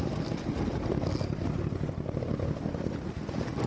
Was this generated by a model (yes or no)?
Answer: no